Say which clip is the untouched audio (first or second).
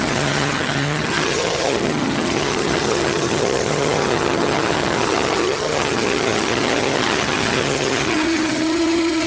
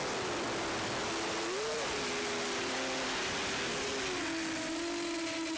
second